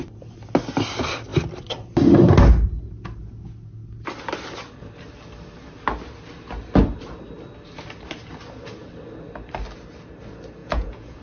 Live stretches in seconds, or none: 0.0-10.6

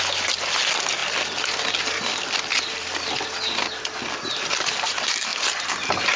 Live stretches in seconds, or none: 0.0-6.2